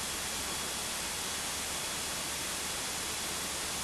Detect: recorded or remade recorded